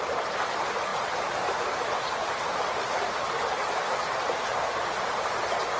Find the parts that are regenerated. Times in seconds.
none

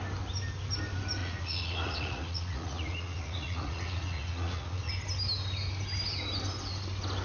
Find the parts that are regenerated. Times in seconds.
1.2-4.9 (vocoder, Vocos)

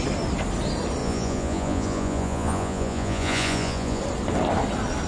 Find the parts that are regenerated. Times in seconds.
1.0-4.0 (vocoder, Vocos)

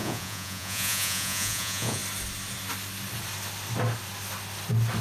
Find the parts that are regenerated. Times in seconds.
0.0-2.0 (vocoder, Vocos)

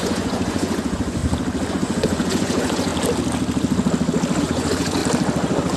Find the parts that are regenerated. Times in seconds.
0.0-1.2 (vocoder, Vocos); 1.7-2.9; 4.4-5.0

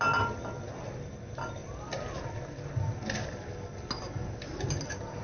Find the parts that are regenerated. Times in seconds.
none

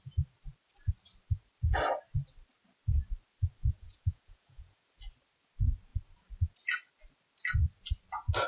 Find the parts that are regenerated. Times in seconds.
3.6-4.9 (vocoder, Vocos)

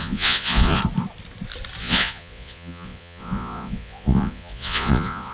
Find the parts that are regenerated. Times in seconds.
0.0-0.8 (vocoder, Vocos); 1.8-5.3